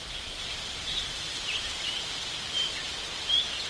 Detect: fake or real fake